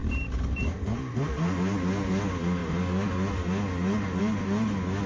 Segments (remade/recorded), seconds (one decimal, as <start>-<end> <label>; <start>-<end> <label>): 0.0-1.1 remade; 1.1-5.1 recorded